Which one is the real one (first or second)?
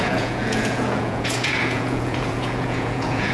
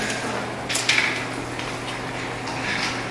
second